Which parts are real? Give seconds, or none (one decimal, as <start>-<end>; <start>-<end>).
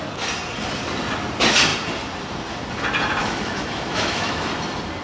0.0-3.2; 4.5-5.0